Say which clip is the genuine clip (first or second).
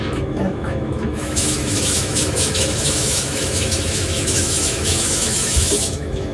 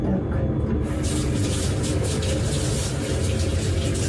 second